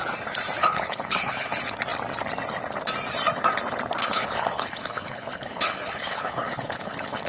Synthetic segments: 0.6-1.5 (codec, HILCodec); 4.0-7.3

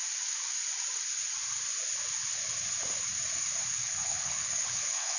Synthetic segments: 3.8-5.2 (codec, HILCodec)

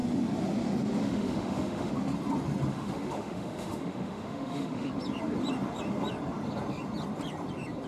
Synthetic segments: 1.0-1.9 (autoencoder, DAC-VAE); 2.7-4.9